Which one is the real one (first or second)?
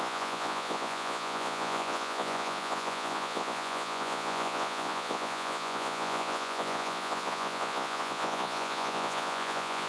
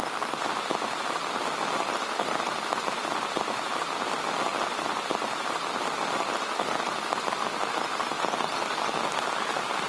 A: second